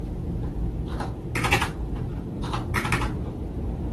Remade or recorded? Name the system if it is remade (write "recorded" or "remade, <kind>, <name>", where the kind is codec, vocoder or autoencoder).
recorded